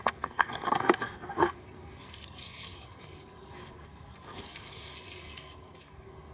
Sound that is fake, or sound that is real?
fake